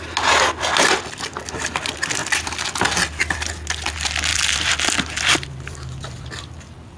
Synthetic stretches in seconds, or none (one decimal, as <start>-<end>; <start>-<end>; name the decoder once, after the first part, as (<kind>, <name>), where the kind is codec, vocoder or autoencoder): none